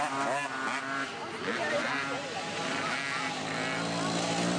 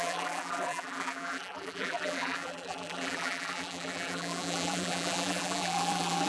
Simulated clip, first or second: second